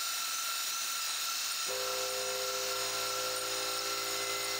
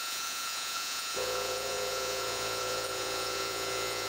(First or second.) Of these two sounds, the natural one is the first